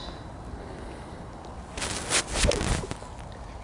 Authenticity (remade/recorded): recorded